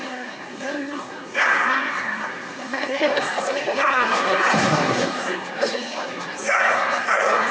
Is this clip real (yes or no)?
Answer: no